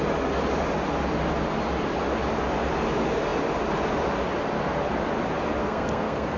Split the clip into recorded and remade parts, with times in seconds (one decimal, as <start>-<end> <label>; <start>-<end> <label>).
0.0-5.6 recorded; 5.6-6.4 remade